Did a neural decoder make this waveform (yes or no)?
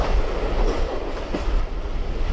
no